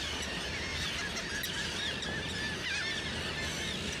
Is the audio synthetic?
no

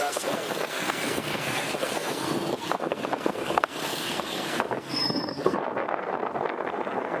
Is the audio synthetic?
yes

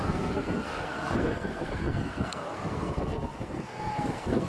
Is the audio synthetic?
yes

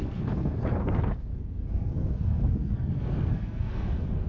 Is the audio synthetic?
yes